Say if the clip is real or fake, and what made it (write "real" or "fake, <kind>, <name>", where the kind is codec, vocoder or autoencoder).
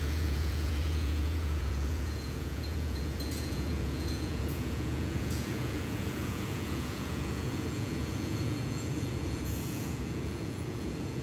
fake, vocoder, Vocos